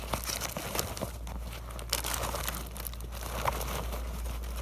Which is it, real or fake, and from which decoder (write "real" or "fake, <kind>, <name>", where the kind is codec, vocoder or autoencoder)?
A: real